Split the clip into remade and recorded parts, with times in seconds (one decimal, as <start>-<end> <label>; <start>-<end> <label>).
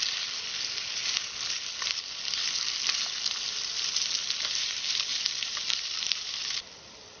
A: 0.0-5.1 recorded; 5.1-6.6 remade; 6.6-7.2 recorded